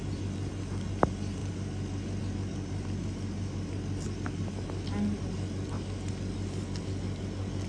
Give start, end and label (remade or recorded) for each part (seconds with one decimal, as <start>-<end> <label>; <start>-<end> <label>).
0.0-7.7 recorded